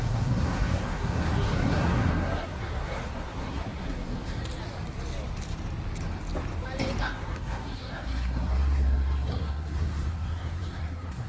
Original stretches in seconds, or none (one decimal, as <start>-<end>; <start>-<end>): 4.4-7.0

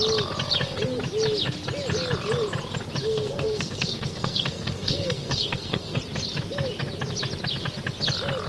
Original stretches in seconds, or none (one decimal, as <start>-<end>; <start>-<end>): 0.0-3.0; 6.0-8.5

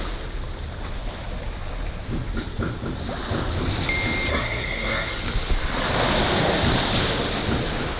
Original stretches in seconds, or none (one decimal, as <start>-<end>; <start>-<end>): 0.0-4.3; 5.2-8.0